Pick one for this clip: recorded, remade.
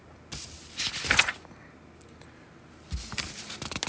recorded